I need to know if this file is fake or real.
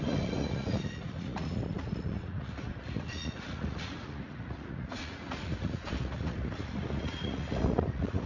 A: fake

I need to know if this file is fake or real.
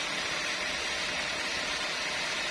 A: real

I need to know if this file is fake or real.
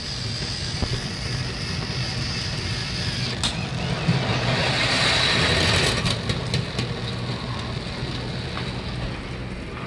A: real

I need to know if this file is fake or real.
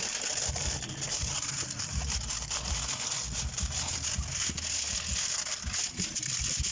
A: real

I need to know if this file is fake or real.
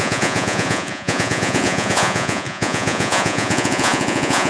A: fake